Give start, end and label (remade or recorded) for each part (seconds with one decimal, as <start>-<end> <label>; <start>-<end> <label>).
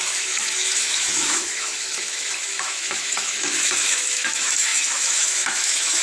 0.0-6.0 remade